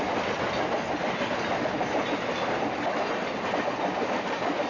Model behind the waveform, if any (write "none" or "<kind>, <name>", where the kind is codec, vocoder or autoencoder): none